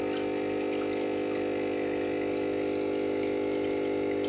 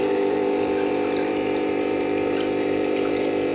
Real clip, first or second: first